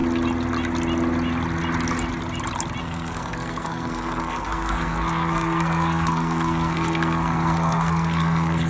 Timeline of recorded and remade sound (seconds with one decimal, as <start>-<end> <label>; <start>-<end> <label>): 0.0-2.8 recorded; 2.8-8.7 remade